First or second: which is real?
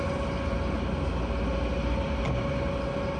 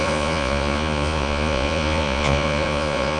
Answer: first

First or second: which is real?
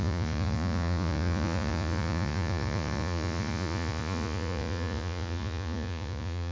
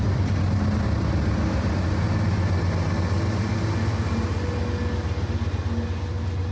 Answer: second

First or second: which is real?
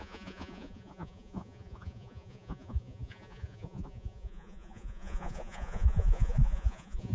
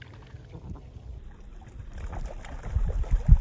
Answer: second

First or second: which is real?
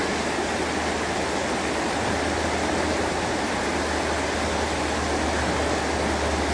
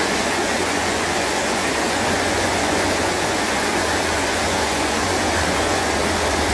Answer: first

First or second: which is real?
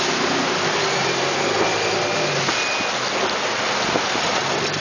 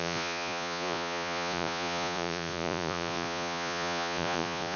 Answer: first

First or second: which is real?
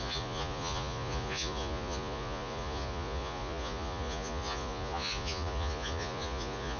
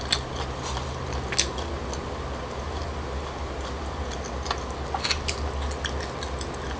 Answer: second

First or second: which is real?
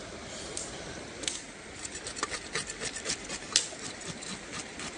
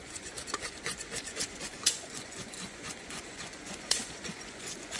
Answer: first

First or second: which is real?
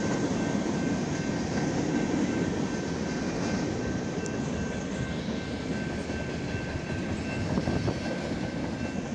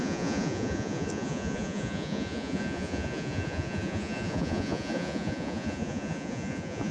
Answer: first